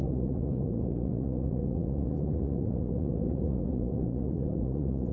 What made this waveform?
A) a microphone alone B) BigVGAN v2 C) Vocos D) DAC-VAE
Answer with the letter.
C